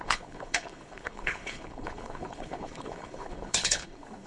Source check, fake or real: fake